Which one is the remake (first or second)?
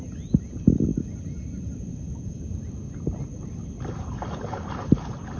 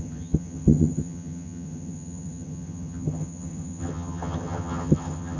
second